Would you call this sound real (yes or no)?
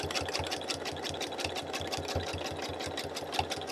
yes